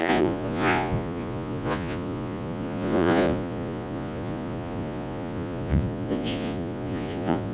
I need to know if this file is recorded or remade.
remade